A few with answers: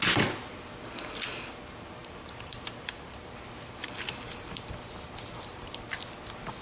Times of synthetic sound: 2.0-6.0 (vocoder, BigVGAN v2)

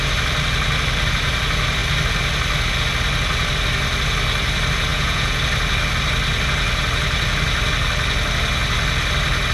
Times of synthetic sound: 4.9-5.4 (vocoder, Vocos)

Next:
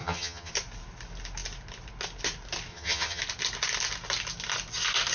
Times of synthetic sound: 0.0-0.5 (vocoder, HiFi-GAN); 2.7-3.2

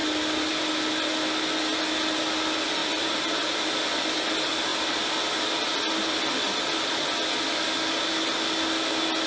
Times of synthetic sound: 2.8-3.4 (vocoder, BigVGAN v2)

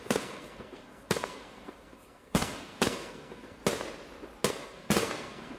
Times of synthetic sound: 0.0-3.6 (codec, SNAC); 4.5-5.6